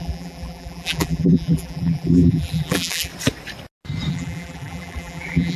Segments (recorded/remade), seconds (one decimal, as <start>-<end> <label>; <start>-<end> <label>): 0.0-3.1 remade; 3.1-4.1 recorded; 4.1-5.6 remade